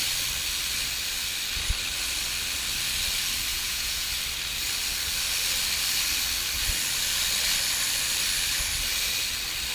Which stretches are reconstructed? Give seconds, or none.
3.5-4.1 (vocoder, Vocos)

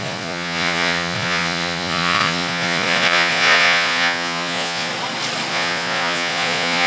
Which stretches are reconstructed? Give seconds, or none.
0.0-4.9 (vocoder, Vocos); 5.5-6.9